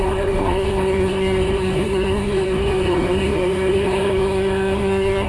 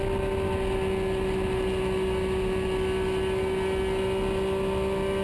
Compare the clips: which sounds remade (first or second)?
first